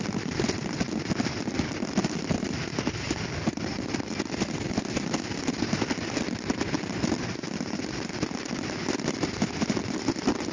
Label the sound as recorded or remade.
recorded